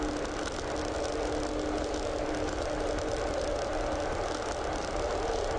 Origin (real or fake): real